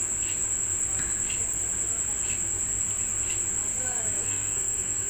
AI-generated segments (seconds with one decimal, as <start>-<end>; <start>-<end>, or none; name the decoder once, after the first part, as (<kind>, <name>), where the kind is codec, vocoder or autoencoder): 4.2-5.1 (codec, SNAC)